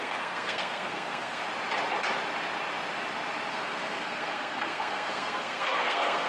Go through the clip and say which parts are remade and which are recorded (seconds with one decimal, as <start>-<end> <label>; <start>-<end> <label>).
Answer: 0.0-1.4 remade; 1.4-3.5 recorded; 3.5-6.3 remade